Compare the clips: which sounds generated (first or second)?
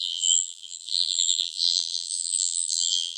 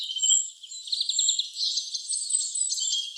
first